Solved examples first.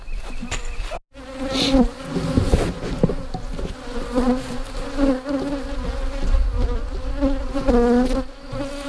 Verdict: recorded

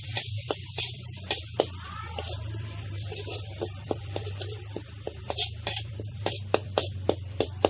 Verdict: remade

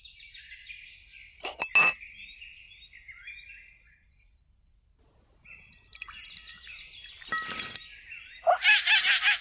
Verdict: recorded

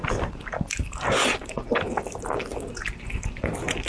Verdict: recorded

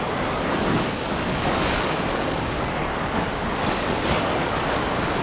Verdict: remade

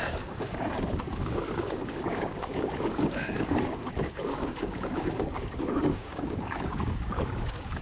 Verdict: remade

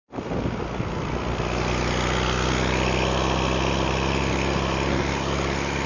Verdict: recorded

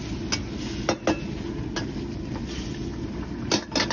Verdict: recorded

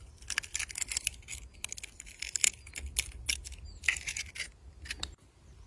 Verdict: recorded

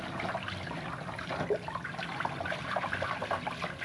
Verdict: recorded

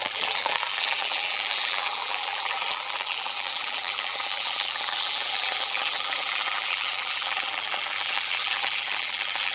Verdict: remade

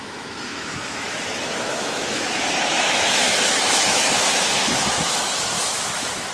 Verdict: remade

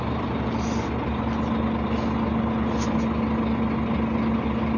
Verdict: recorded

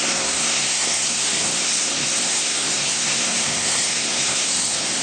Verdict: remade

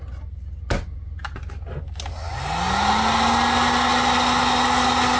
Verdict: recorded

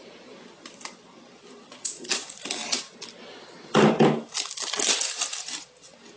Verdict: recorded